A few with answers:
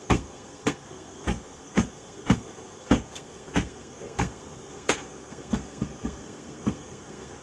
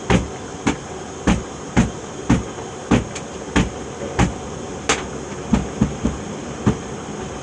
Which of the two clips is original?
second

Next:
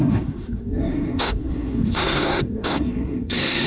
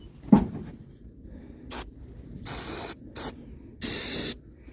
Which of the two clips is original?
second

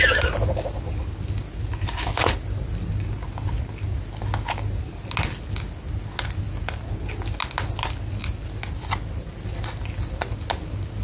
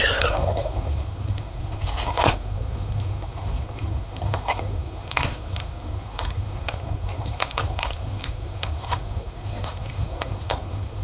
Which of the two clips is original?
first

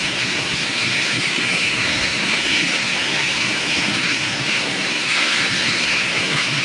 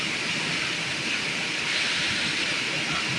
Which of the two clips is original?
second